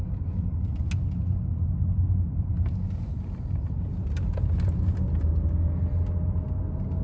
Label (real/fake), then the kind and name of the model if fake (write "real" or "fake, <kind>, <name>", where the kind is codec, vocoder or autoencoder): real